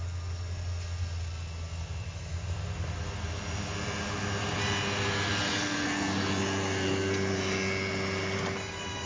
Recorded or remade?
recorded